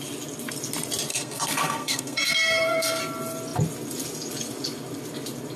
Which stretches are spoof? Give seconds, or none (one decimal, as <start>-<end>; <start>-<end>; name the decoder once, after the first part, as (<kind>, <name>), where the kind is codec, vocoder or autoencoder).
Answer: 1.1-3.0 (codec, SNAC)